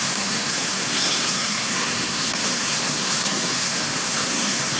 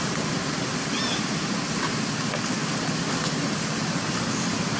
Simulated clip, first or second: first